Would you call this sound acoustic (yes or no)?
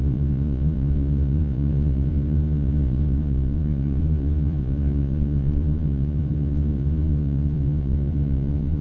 no